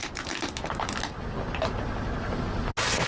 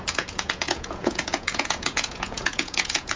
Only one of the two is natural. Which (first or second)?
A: first